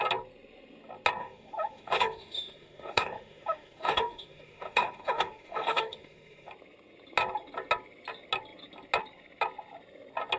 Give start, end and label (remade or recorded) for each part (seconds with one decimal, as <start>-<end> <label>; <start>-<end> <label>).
0.0-1.2 recorded; 1.2-6.5 remade; 6.5-10.4 recorded